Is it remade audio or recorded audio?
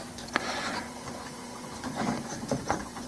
remade